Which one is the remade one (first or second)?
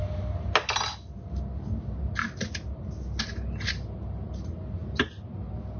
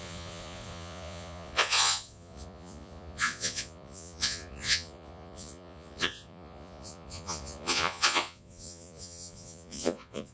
second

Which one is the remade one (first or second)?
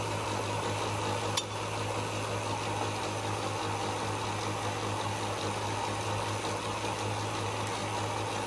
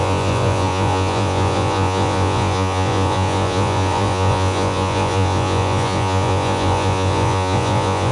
second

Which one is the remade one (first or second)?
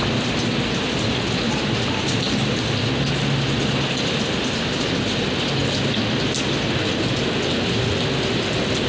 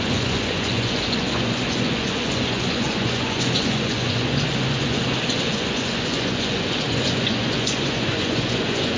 second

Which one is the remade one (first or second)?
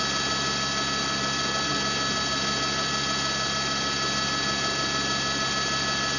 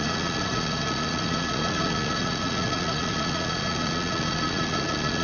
second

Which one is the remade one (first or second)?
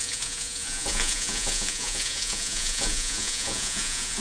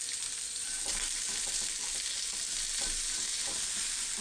first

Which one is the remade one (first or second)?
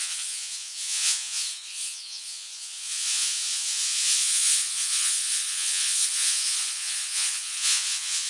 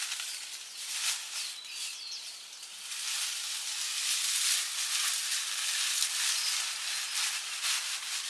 first